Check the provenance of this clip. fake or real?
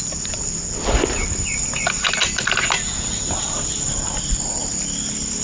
real